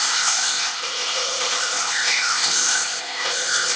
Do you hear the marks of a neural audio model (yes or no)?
yes